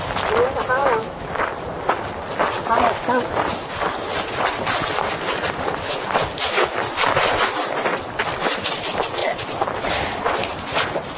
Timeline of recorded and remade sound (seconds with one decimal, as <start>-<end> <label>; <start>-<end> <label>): 0.0-0.8 recorded; 0.8-1.3 remade; 1.3-11.2 recorded